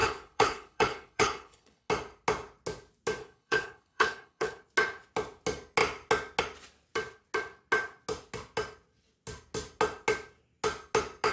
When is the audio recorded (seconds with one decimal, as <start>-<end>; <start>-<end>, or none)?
1.9-3.2; 4.6-11.3